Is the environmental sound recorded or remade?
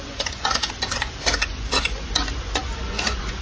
remade